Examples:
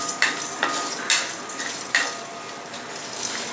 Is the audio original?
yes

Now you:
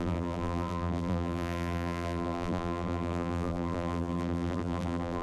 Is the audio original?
no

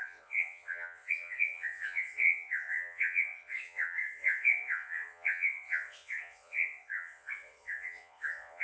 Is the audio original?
no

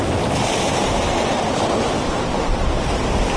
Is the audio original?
yes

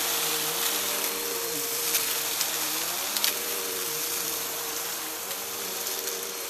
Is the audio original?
no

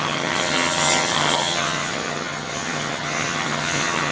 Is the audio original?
no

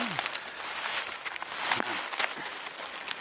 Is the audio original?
yes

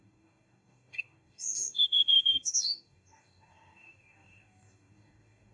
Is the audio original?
no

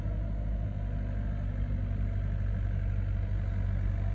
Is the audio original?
yes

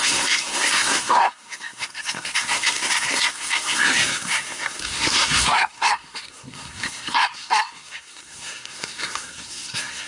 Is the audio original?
no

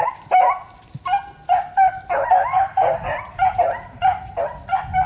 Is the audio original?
yes